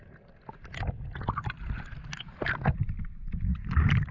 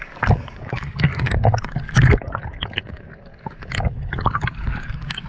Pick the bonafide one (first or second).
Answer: first